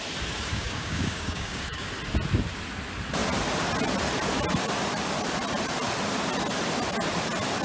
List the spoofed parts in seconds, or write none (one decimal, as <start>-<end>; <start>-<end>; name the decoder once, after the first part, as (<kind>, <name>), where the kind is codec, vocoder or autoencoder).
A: 0.5-1.9 (codec, DAC)